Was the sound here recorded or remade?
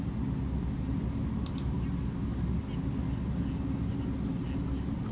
recorded